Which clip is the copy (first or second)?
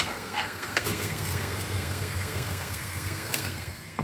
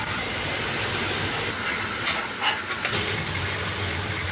first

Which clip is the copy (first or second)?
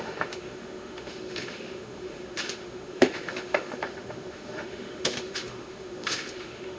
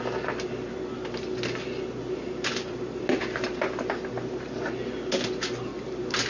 first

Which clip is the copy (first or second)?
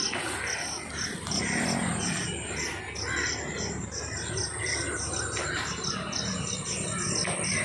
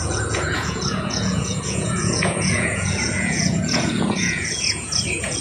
second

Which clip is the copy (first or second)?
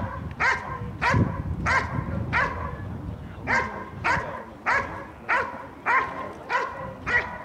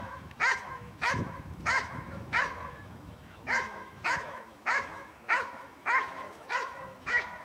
second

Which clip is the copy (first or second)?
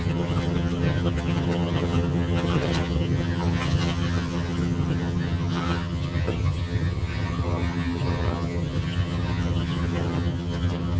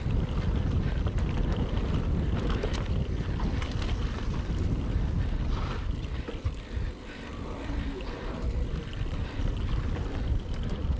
first